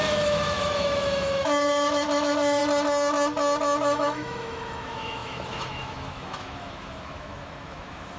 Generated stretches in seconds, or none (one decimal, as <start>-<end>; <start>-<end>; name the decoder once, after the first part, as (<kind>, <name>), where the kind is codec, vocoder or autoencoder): 0.0-2.6 (autoencoder, DAC-VAE); 3.8-8.2